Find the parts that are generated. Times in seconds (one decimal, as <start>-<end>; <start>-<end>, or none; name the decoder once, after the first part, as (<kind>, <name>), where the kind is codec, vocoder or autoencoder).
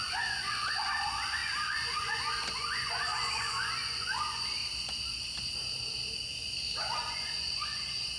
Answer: 0.0-4.6 (vocoder, Vocos); 6.8-8.2